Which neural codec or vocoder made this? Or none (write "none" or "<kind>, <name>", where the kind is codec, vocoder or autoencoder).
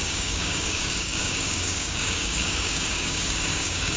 codec, DAC